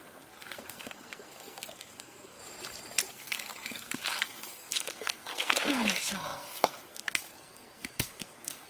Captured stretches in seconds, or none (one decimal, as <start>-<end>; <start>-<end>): 2.4-3.1